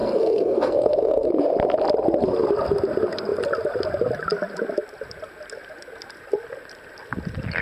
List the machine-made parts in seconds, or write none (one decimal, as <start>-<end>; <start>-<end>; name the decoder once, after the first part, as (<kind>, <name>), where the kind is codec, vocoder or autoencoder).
0.0-1.3 (codec, SNAC)